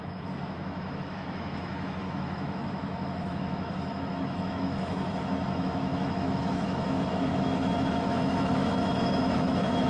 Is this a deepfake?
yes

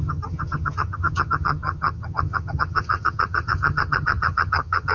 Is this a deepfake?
yes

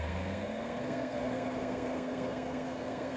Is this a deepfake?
yes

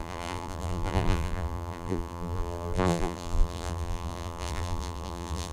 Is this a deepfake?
yes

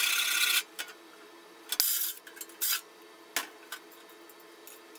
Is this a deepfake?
no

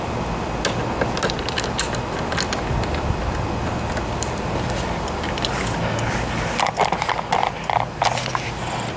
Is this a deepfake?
no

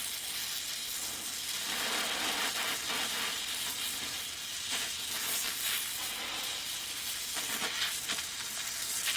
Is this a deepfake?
no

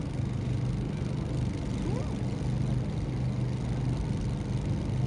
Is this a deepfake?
no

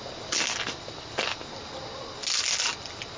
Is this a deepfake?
no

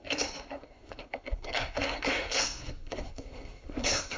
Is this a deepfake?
yes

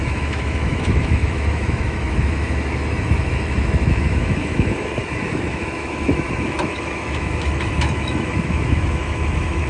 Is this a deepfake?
yes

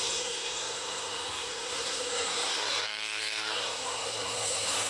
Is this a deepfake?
yes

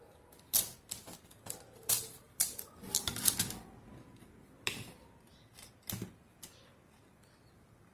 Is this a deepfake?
yes